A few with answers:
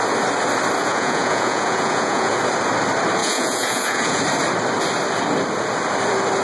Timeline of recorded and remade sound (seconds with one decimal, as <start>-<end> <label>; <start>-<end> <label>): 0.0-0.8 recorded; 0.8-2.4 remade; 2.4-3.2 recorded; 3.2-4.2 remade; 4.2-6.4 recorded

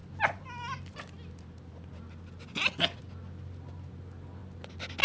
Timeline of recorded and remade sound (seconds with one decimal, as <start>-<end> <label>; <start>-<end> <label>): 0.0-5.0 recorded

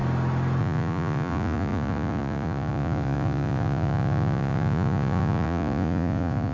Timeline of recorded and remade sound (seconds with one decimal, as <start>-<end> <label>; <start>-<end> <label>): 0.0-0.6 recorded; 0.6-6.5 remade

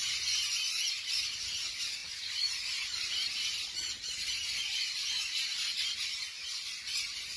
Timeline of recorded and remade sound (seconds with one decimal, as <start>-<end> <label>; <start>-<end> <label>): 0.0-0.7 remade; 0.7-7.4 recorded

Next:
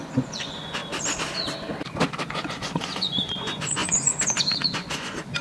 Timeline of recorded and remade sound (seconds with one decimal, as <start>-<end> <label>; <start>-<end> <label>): 0.0-0.8 remade; 0.8-2.3 recorded; 2.3-5.4 remade

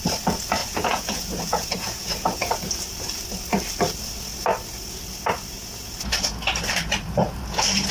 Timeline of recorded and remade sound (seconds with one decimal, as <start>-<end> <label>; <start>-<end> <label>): 0.0-0.6 recorded; 0.6-2.6 remade; 2.6-7.9 recorded

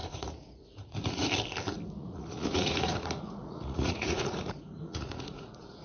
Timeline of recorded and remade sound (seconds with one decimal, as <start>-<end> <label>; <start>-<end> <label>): 0.0-1.3 remade; 1.3-2.0 recorded; 2.0-5.8 remade